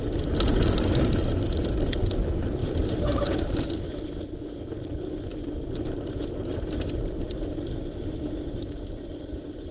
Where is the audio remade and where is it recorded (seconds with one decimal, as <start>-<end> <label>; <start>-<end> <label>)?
0.0-2.6 recorded; 2.6-4.6 remade; 4.6-9.7 recorded

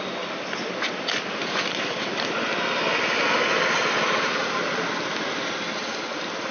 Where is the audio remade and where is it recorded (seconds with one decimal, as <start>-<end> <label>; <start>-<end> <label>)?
0.0-6.5 recorded

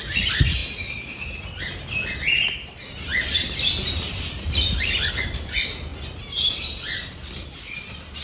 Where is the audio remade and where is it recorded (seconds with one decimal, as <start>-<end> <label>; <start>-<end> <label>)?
0.0-8.2 recorded

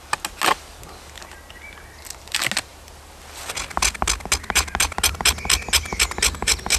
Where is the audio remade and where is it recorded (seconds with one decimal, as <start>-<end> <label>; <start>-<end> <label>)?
0.0-6.8 recorded

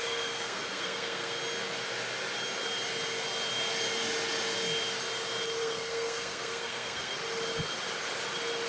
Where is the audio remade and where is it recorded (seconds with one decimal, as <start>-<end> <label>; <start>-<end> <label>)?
0.0-1.4 remade; 1.4-5.6 recorded; 5.6-7.1 remade; 7.1-8.7 recorded

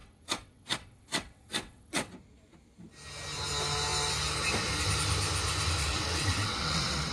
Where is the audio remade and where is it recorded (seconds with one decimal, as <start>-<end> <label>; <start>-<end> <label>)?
0.0-2.1 remade; 2.1-5.8 recorded; 5.8-7.1 remade

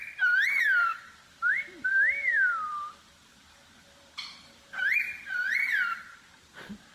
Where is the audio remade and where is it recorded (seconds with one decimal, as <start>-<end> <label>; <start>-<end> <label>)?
0.0-6.9 remade

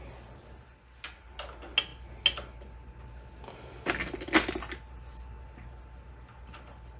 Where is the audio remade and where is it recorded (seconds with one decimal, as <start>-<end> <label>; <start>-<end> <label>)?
0.0-7.0 recorded